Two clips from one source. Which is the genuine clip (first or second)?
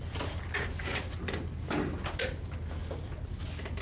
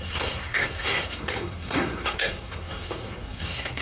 first